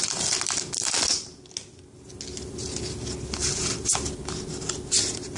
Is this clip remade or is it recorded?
recorded